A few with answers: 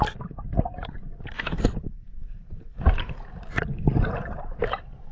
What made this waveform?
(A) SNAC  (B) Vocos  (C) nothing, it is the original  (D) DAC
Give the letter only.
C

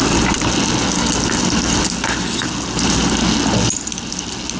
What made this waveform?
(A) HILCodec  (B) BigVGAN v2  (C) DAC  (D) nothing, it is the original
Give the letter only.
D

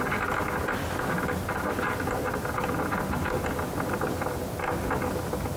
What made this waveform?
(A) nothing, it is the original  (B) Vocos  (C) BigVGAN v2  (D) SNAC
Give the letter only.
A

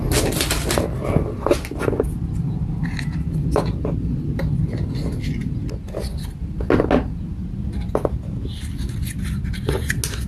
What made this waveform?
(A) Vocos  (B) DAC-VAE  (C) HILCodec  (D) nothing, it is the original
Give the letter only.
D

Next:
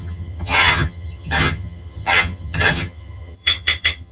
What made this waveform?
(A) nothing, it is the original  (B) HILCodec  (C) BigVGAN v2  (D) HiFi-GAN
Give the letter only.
D